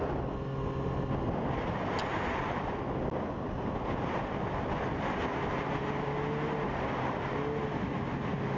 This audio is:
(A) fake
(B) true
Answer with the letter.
B